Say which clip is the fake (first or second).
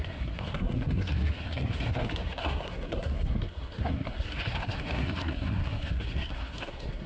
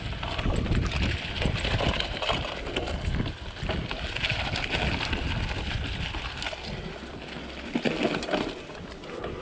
first